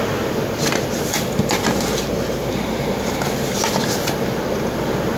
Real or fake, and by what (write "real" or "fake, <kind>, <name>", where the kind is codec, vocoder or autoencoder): real